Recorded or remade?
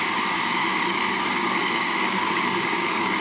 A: remade